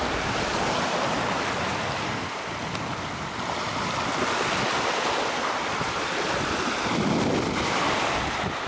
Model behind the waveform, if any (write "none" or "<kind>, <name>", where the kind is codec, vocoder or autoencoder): none